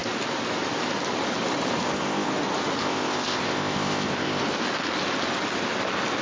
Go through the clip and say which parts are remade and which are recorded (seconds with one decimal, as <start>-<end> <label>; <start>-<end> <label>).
0.0-1.8 recorded; 1.8-2.3 remade; 2.3-2.8 recorded; 2.8-4.4 remade; 4.4-6.2 recorded

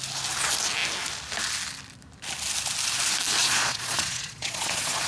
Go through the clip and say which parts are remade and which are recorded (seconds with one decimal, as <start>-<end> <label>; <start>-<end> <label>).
0.0-3.4 recorded; 3.4-5.1 remade

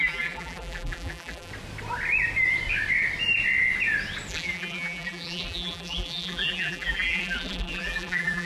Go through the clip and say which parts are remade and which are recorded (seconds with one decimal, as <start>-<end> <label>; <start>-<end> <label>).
0.0-1.5 remade; 1.5-4.3 recorded; 4.3-8.5 remade

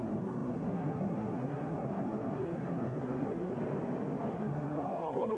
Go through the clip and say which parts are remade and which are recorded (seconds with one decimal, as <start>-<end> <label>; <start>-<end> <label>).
0.0-3.5 remade; 3.5-4.3 recorded; 4.3-5.4 remade